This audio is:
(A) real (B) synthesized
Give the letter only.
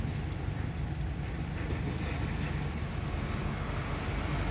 A